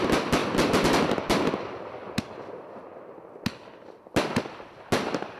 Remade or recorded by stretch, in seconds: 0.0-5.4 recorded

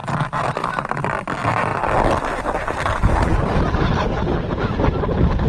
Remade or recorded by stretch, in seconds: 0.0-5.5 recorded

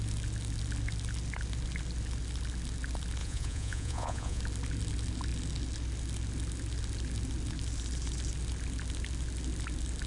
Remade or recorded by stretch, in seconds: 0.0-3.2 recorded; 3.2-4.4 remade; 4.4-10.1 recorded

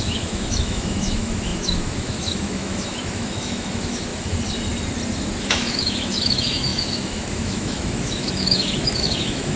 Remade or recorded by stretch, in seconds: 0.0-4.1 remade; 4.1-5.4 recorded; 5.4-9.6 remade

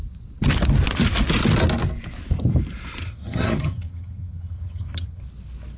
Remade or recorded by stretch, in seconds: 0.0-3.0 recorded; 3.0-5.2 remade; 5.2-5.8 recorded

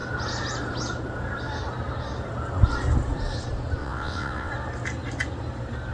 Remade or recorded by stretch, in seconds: 0.0-3.8 recorded; 3.8-4.5 remade; 4.5-5.9 recorded

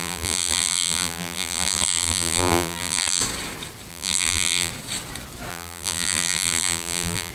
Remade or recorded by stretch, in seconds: 0.0-3.2 remade; 3.2-3.9 recorded; 3.9-4.7 remade; 4.7-5.5 recorded; 5.5-7.3 remade

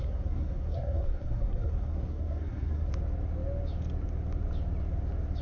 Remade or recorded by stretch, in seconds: 0.0-2.9 remade; 2.9-5.4 recorded